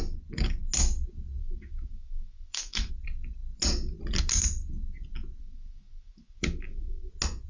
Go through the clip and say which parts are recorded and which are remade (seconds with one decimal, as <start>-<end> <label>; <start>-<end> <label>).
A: 0.0-1.4 recorded; 1.4-2.9 remade; 2.9-5.4 recorded; 5.4-7.1 remade; 7.1-7.5 recorded